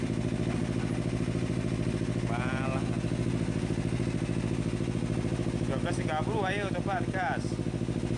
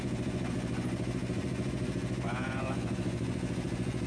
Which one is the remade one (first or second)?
second